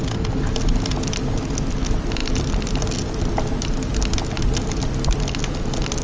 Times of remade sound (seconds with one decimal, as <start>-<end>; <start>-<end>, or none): none